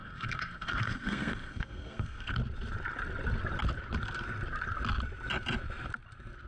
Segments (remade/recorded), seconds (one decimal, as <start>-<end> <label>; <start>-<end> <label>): 0.0-2.4 remade; 2.4-6.5 recorded